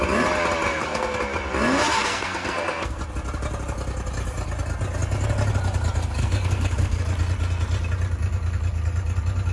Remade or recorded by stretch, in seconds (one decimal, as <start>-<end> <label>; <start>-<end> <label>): 0.0-0.7 recorded; 0.7-1.2 remade; 1.2-1.9 recorded; 1.9-3.0 remade; 3.0-6.2 recorded; 6.2-7.0 remade; 7.0-9.5 recorded